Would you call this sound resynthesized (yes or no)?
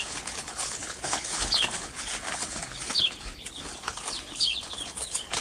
yes